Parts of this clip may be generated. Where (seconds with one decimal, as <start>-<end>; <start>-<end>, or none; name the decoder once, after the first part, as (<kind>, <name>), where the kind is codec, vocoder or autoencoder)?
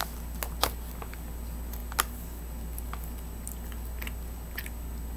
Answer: none